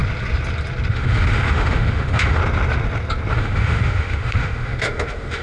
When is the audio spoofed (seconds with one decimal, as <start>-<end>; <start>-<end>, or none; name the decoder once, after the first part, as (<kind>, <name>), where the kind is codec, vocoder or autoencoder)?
0.9-2.4 (autoencoder, DAC-VAE); 3.3-5.4